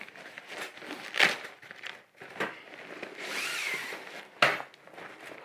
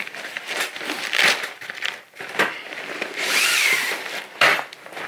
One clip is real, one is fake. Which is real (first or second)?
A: first